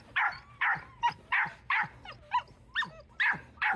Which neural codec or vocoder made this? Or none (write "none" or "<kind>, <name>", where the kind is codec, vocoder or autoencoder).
none